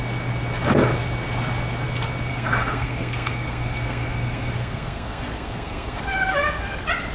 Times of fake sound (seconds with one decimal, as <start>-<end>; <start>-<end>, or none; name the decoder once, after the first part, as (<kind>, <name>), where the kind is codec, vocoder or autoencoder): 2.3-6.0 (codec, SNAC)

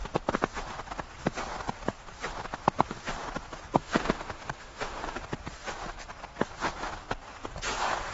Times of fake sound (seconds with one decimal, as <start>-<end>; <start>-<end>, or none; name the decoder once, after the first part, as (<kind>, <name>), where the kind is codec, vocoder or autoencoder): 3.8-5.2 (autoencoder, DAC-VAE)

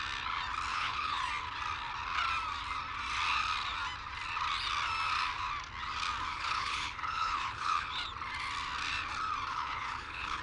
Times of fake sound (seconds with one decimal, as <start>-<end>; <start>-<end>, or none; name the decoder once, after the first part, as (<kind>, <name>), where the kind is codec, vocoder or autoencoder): 0.7-1.2 (codec, HILCodec); 6.3-7.9; 9.5-10.4

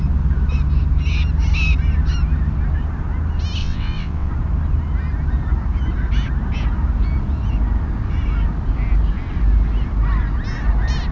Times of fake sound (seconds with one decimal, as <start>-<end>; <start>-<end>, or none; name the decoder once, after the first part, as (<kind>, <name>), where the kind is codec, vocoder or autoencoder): 3.6-4.3 (vocoder, WaveNeXt)

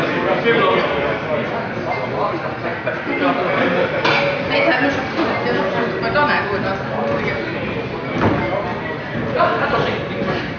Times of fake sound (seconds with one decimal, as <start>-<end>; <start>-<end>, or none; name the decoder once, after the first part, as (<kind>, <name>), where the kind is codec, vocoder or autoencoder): 2.7-3.2 (vocoder, BigVGAN v2)

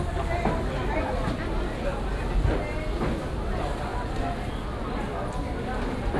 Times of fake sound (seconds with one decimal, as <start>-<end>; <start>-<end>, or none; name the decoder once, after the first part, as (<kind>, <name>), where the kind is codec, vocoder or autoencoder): none